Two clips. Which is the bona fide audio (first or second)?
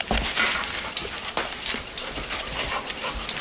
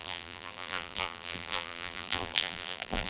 first